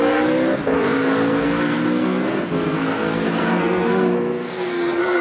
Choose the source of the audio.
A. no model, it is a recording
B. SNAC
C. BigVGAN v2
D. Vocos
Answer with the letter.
B